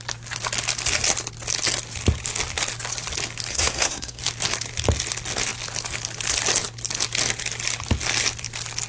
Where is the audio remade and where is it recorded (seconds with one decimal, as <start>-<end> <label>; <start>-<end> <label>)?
0.0-3.5 recorded; 3.5-4.2 remade; 4.2-8.9 recorded